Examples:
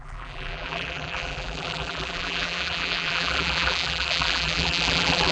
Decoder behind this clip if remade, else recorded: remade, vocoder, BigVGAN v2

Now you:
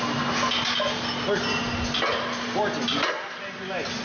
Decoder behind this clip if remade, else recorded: recorded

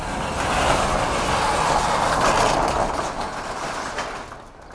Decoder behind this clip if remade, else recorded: recorded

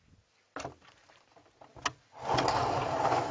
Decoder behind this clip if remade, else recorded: recorded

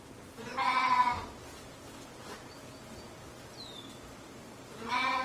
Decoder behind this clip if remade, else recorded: recorded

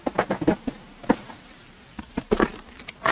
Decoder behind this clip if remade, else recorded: recorded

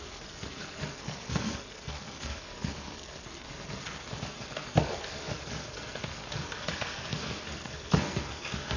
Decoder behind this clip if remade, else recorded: remade, codec, SNAC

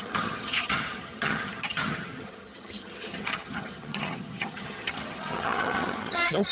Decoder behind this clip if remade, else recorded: remade, vocoder, HiFi-GAN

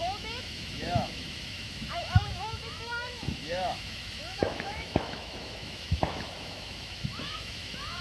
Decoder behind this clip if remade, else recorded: remade, autoencoder, DAC-VAE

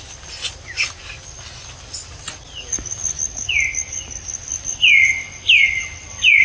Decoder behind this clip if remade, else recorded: recorded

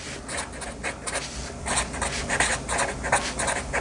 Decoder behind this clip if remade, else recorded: recorded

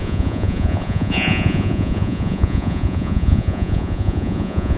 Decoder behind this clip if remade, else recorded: remade, vocoder, Vocos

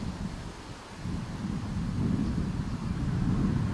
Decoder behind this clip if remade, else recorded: recorded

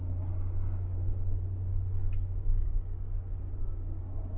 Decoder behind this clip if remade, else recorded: recorded